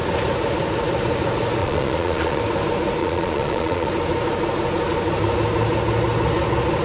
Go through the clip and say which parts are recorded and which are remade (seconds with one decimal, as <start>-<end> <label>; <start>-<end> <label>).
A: 0.0-1.6 recorded; 1.6-2.4 remade; 2.4-3.0 recorded; 3.0-3.9 remade; 3.9-6.8 recorded